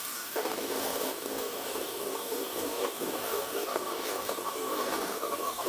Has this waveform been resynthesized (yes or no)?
yes